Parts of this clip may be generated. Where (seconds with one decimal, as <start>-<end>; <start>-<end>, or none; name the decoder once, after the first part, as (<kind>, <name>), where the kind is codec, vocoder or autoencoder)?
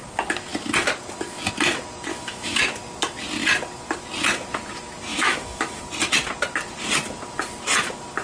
2.1-2.6 (autoencoder, DAC-VAE); 5.1-5.8